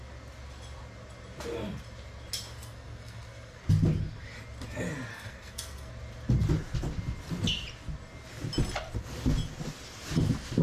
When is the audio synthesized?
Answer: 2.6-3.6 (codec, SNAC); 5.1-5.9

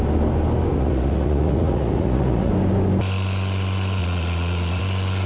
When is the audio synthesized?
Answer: 0.7-2.5 (vocoder, Vocos); 4.0-4.8

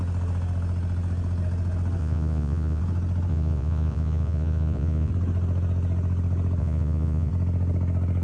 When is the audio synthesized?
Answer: 2.0-2.8 (vocoder, Vocos); 3.3-5.1; 6.6-7.3

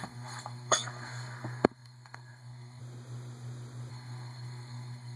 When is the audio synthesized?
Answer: 0.0-2.8 (codec, SNAC); 3.9-5.2

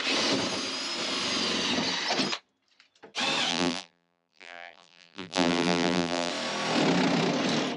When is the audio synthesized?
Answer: 3.5-6.3 (vocoder, BigVGAN v2)